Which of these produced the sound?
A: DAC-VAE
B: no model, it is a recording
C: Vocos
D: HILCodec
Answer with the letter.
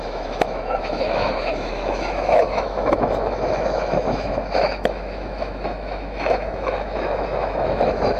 A